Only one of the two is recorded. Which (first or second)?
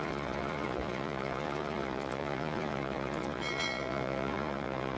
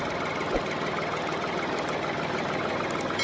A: second